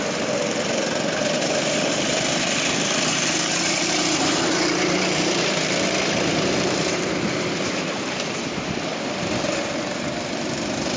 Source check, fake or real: fake